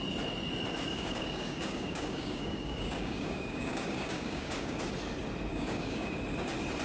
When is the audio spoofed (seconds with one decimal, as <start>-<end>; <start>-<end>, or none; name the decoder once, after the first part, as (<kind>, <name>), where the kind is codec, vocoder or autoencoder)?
0.9-4.8 (codec, DAC); 5.5-6.2